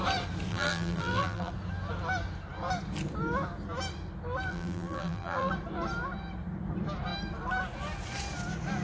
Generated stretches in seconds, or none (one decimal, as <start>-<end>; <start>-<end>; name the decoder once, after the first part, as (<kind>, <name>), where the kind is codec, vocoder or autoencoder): 0.5-1.5 (vocoder, BigVGAN v2); 4.5-5.5